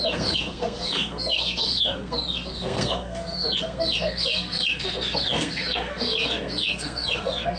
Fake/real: fake